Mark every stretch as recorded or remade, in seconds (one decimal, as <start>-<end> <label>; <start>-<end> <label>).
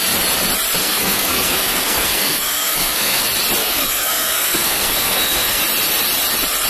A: 0.0-0.8 recorded; 0.8-3.2 remade; 3.2-3.6 recorded; 3.6-5.6 remade; 5.6-6.7 recorded